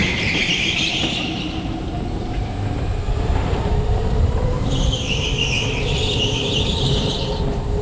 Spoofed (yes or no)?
yes